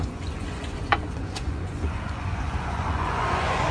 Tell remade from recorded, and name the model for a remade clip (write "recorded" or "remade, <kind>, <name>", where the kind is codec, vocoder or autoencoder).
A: remade, vocoder, Vocos